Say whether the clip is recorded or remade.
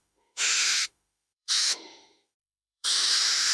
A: remade